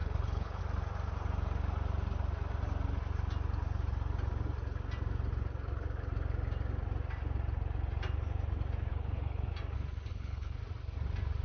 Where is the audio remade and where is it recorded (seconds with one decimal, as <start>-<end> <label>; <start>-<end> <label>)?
0.0-0.6 remade; 0.6-8.9 recorded; 8.9-9.5 remade; 9.5-10.1 recorded; 10.1-10.6 remade; 10.6-11.4 recorded